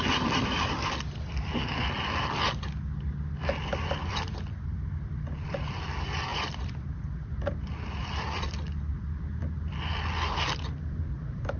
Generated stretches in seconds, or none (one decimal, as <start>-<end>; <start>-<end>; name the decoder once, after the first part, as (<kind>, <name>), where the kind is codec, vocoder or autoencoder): 0.0-1.6 (vocoder, BigVGAN v2); 4.0-9.4; 11.2-11.6